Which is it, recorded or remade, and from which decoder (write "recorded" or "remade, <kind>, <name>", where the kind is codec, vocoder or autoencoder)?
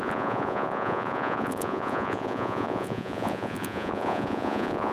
remade, vocoder, Vocos